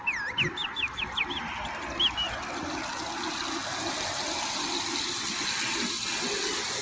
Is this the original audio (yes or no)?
yes